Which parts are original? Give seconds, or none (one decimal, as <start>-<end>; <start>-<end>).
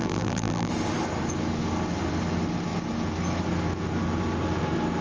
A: 0.7-5.0